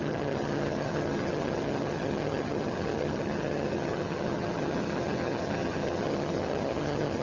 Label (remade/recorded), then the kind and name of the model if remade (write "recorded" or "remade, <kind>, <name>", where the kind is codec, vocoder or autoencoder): remade, vocoder, HiFi-GAN